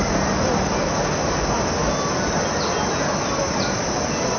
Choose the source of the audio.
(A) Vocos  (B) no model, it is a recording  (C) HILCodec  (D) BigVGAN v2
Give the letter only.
B